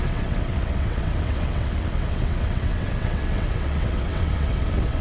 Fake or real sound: fake